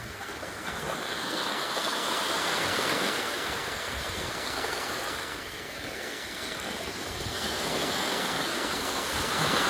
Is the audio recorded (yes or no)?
no